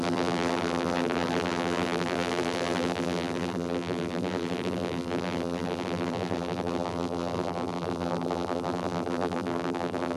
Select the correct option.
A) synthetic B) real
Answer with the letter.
A